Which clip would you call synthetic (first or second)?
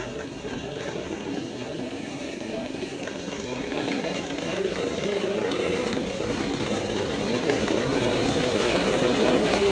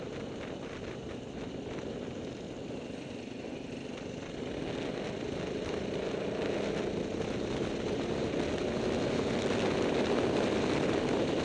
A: first